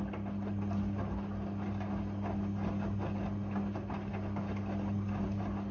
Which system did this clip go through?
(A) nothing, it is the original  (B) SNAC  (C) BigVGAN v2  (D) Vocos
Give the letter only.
A